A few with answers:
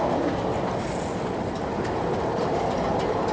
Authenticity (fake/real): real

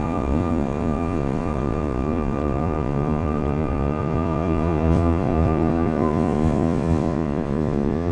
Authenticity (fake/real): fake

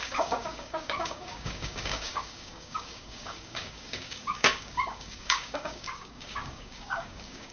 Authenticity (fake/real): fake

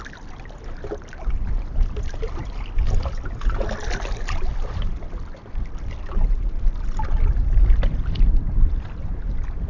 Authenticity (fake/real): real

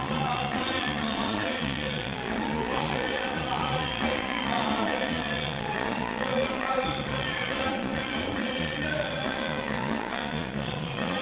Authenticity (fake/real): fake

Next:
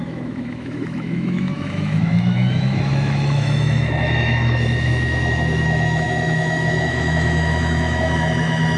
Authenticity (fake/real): fake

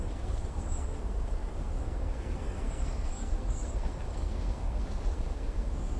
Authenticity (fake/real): fake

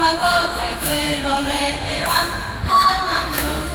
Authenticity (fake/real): fake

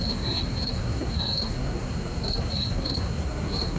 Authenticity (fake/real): fake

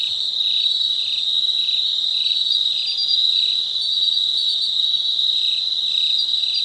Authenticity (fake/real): real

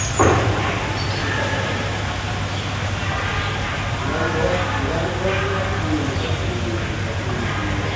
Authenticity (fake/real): real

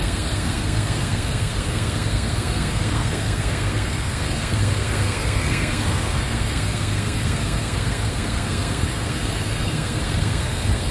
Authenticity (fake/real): fake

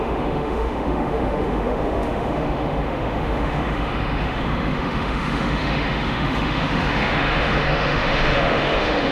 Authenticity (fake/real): fake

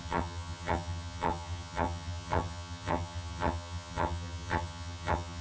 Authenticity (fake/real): fake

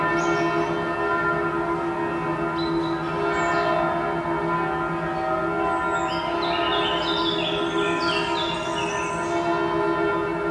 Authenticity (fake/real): real